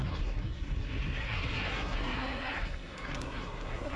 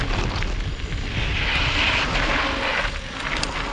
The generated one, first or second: first